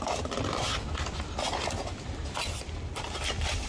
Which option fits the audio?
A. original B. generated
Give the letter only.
A